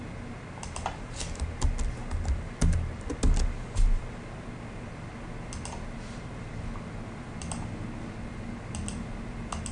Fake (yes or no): no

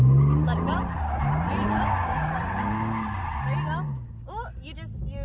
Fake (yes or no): no